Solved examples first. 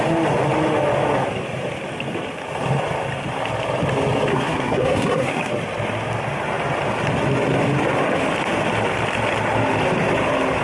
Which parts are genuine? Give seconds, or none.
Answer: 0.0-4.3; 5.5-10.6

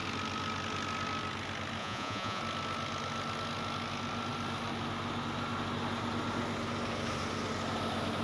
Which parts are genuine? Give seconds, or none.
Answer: 0.0-1.8; 2.4-8.2

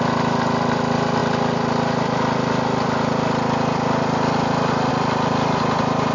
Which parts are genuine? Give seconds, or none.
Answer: 0.0-6.1

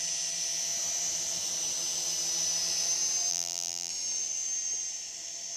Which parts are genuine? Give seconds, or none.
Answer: 0.0-3.3; 3.9-5.6

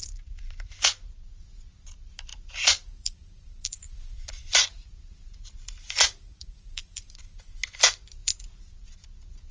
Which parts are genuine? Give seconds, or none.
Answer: 1.2-2.3; 7.4-8.2; 8.9-9.5

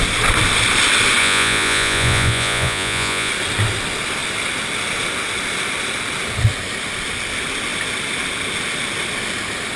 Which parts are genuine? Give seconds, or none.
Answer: 0.0-1.2; 3.3-9.8

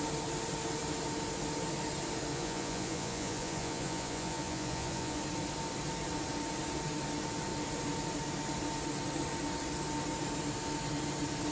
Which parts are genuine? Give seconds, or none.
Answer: 0.0-2.3; 5.2-11.5